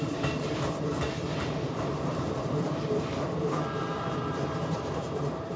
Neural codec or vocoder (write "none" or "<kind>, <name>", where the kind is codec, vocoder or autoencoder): vocoder, BigVGAN v2